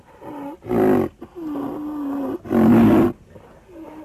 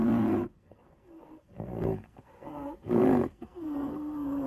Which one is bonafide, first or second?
first